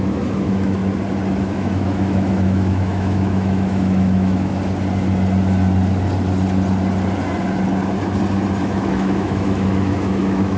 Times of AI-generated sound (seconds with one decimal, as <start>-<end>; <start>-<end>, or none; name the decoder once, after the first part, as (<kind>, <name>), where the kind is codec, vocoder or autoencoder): 0.0-0.8 (autoencoder, DAC-VAE); 1.4-4.5; 8.6-10.6